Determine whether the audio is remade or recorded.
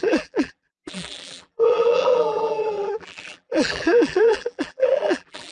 remade